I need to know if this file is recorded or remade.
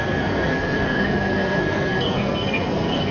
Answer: remade